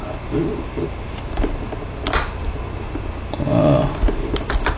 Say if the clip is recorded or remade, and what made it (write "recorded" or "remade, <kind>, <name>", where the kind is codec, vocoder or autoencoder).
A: recorded